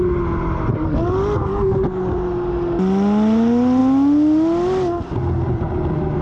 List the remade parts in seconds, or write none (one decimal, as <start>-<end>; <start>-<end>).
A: none

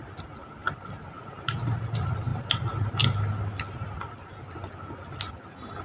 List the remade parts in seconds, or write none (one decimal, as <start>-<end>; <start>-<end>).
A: none

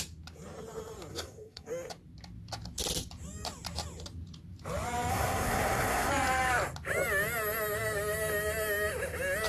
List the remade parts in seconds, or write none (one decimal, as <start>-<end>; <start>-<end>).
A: 1.1-1.7; 5.1-6.1

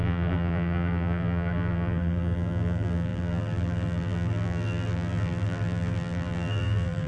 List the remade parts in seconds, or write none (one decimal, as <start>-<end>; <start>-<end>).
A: 0.0-7.1